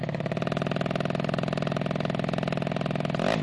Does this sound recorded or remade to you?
recorded